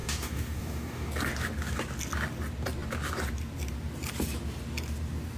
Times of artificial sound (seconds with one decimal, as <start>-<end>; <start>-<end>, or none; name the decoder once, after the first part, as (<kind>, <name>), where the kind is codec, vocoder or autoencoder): 0.0-1.1 (codec, DAC)